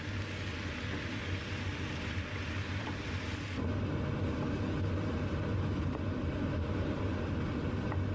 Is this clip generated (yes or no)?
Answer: no